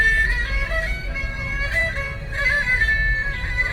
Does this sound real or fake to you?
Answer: fake